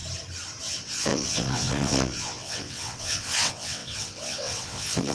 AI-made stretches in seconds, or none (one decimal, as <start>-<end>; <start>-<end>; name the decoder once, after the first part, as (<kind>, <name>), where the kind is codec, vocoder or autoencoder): 0.6-5.1 (vocoder, WaveNeXt)